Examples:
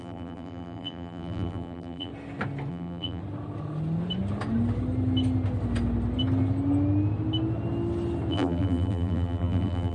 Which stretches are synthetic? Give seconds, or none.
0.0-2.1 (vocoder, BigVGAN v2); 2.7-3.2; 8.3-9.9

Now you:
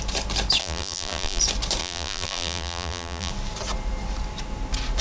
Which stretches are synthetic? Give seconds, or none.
0.6-1.4 (vocoder, BigVGAN v2); 1.8-3.3

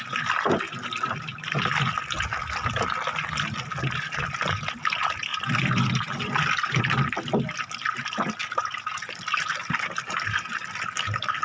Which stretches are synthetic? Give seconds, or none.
5.3-6.8 (vocoder, BigVGAN v2); 8.4-9.0

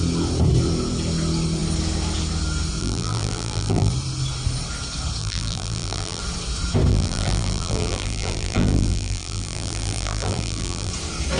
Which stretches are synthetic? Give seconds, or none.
2.8-3.9 (vocoder, BigVGAN v2); 5.2-6.2; 6.9-10.9

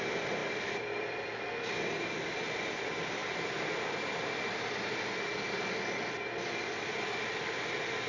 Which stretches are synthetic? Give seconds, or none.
3.2-4.4 (vocoder, BigVGAN v2)